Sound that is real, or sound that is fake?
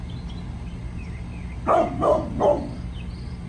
real